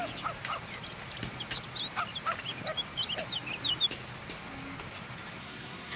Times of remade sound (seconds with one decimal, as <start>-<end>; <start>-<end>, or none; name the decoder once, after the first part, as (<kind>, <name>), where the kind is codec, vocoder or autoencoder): 5.4-6.0 (codec, SNAC)